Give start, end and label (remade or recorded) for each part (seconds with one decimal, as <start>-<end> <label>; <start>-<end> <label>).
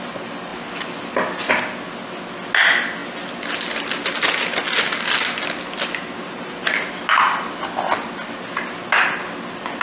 0.0-9.8 recorded